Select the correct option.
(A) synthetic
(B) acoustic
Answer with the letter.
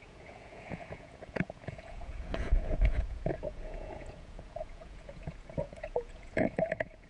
A